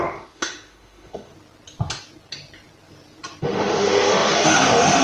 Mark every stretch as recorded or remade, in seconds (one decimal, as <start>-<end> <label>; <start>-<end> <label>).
0.0-1.3 remade; 1.3-3.4 recorded; 3.4-5.0 remade

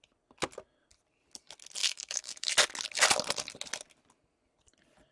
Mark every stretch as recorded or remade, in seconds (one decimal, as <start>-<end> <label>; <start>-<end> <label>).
0.0-1.8 recorded; 1.8-2.5 remade; 2.5-5.1 recorded

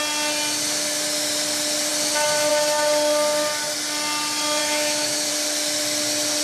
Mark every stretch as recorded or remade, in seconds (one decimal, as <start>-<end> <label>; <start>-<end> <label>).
0.0-4.6 recorded; 4.6-5.3 remade; 5.3-6.4 recorded

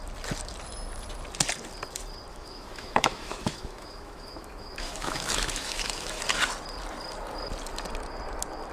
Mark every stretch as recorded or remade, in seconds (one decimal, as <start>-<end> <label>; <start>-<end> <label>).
0.0-2.3 recorded; 2.3-6.2 remade; 6.2-8.7 recorded

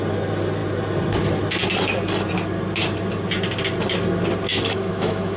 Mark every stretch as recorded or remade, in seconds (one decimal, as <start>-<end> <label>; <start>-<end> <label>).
0.0-4.5 recorded; 4.5-5.4 remade

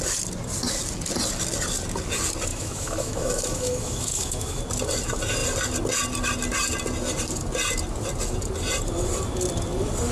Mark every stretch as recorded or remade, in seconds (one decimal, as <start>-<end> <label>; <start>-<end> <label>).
0.0-2.5 recorded; 2.5-4.6 remade; 4.6-10.1 recorded

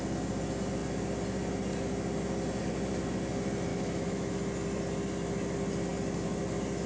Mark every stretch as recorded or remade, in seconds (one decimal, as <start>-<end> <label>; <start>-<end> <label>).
0.0-3.7 recorded; 3.7-4.3 remade; 4.3-6.9 recorded